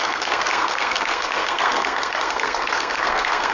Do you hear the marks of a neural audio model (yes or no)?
yes